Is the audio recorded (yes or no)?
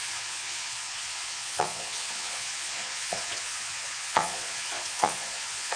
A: no